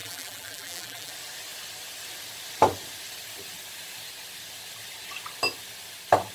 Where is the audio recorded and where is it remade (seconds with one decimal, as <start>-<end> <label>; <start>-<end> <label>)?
0.0-1.1 remade; 1.1-6.3 recorded